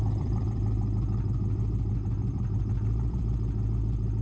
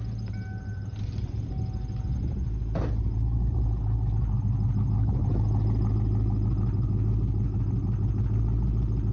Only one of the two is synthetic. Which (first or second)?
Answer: first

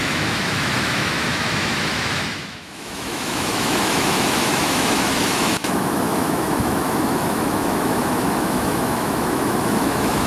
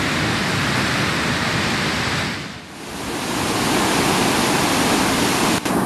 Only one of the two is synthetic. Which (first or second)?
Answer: first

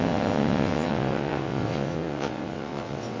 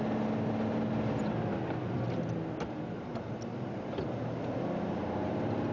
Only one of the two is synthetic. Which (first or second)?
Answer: first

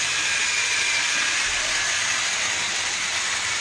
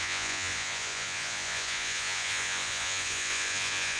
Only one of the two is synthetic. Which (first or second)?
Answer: second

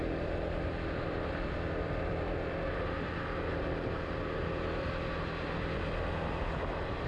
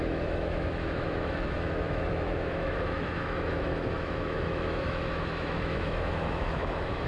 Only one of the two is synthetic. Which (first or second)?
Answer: second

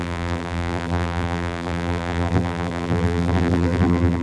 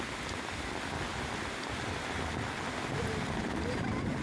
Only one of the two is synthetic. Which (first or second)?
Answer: first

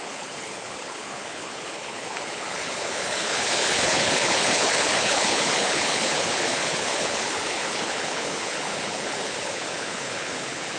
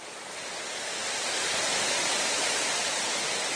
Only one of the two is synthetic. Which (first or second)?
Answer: first